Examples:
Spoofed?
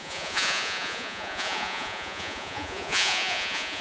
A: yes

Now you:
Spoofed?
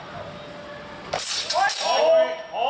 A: no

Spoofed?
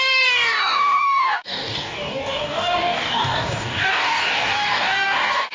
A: yes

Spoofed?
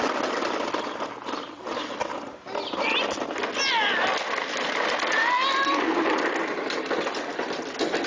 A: no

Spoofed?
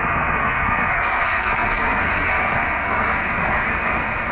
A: yes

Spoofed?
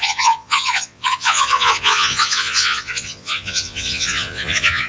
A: yes